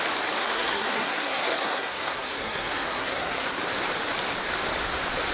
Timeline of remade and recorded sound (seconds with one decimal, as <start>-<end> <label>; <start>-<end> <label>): 0.0-0.4 recorded; 0.4-3.6 remade; 3.6-5.3 recorded